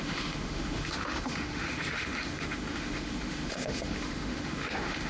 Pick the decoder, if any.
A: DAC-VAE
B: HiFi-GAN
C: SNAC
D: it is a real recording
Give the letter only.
A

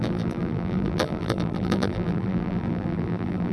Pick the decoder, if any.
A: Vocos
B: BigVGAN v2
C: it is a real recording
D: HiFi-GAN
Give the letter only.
B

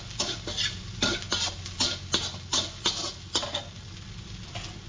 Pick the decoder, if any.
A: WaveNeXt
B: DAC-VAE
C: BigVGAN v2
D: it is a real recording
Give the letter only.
D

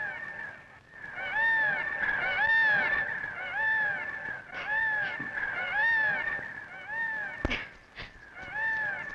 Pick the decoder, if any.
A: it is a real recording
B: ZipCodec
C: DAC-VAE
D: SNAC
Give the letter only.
A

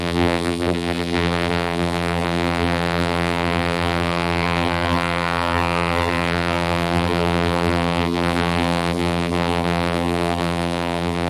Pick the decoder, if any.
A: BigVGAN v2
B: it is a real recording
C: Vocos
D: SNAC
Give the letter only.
A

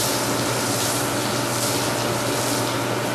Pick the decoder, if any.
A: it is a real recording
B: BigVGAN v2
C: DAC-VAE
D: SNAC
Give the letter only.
A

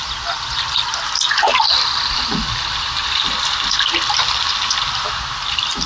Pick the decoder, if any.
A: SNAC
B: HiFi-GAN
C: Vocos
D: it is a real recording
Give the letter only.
D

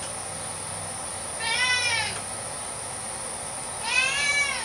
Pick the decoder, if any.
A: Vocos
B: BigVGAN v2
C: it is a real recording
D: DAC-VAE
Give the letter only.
C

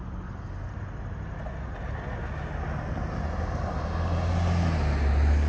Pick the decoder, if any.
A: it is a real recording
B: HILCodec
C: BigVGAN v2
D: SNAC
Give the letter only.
A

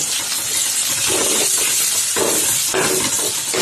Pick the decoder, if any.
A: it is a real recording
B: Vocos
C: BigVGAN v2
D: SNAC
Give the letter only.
A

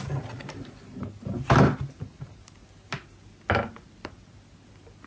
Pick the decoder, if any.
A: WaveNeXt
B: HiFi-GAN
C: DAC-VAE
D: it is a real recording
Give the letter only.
D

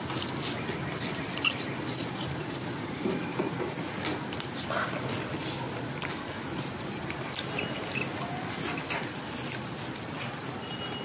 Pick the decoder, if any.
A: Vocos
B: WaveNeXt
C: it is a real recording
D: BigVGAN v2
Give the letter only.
C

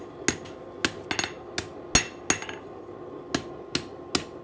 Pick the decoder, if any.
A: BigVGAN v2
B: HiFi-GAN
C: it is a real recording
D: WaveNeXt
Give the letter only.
C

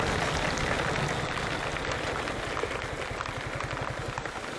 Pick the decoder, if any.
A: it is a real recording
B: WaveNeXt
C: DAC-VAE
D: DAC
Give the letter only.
A